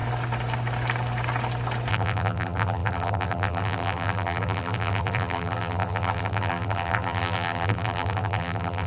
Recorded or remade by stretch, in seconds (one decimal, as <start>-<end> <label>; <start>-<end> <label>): 0.0-1.9 recorded; 1.9-8.9 remade